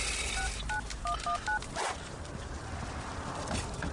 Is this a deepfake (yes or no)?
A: no